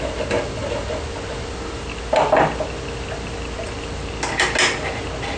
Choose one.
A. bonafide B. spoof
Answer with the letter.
A